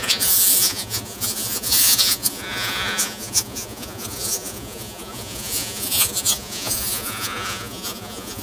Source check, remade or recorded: remade